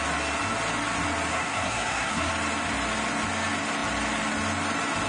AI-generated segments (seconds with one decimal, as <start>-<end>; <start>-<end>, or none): 1.3-2.3